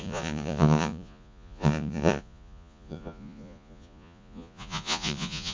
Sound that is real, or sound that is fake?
fake